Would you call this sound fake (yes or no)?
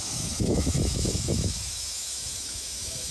yes